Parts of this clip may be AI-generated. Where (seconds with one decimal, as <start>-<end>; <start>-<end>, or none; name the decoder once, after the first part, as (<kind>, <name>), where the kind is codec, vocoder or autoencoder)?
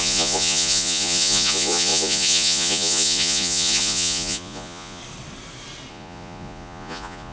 0.0-5.0 (vocoder, Vocos); 5.9-7.3